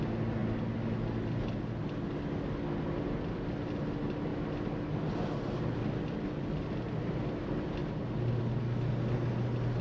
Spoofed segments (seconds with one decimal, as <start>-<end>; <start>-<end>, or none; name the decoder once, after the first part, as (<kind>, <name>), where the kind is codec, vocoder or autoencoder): none